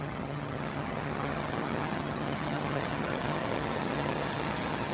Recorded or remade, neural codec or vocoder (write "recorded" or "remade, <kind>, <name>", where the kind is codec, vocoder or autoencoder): remade, vocoder, HiFi-GAN